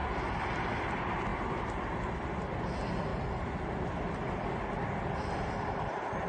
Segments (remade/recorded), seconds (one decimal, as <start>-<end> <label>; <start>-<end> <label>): 0.0-6.3 recorded